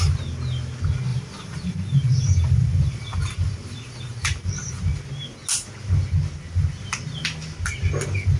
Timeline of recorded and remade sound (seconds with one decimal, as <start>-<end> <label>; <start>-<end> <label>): 0.0-1.1 recorded; 1.1-4.5 remade; 4.5-8.4 recorded